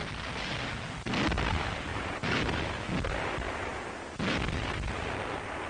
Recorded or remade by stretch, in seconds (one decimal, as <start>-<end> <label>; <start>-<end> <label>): 0.0-1.9 recorded; 1.9-2.8 remade; 2.8-5.7 recorded